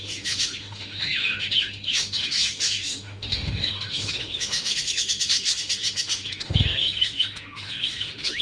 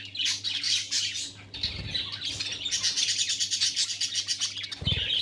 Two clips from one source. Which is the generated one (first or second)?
first